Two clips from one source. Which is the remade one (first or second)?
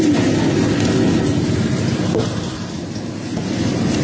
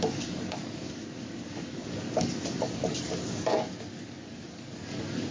second